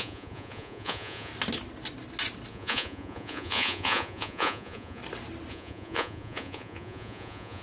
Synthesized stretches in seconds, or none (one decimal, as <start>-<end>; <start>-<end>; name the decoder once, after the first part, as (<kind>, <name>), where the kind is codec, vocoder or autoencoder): 0.0-1.3 (vocoder, Vocos); 2.5-5.0; 5.5-7.6